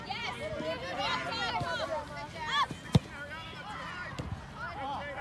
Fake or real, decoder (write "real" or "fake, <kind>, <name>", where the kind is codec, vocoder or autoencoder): real